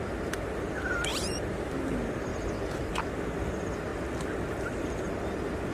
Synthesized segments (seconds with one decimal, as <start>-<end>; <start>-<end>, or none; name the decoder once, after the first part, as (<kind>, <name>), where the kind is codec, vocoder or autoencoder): 1.1-1.7 (vocoder, BigVGAN v2); 2.3-2.9